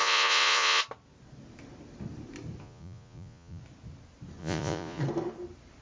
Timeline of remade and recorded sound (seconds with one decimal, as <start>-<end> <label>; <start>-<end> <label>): 0.0-0.8 remade; 0.8-2.6 recorded; 2.6-3.6 remade; 3.6-4.4 recorded; 4.4-5.0 remade; 5.0-5.8 recorded